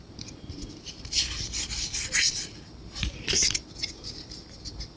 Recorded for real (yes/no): yes